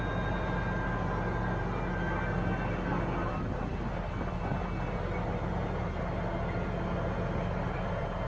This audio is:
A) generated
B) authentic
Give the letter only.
B